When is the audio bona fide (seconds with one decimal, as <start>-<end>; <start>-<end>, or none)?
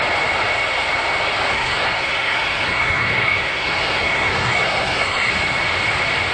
0.0-1.5; 5.3-6.3